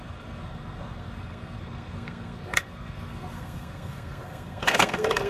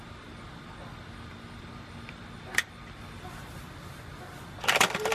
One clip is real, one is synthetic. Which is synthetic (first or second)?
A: first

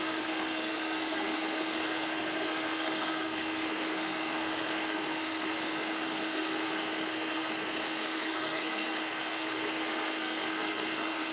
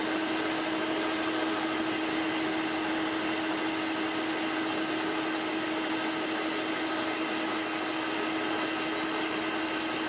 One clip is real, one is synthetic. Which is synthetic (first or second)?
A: first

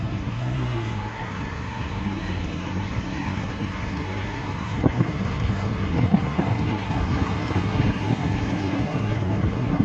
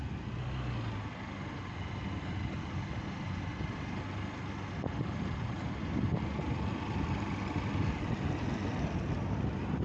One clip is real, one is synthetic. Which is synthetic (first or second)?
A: first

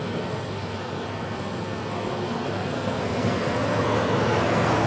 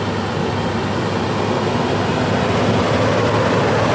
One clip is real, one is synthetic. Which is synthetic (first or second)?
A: first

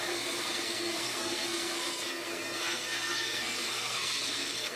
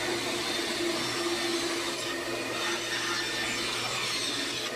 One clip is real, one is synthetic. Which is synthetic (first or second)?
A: first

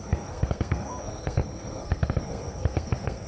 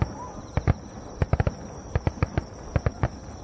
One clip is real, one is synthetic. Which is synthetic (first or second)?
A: first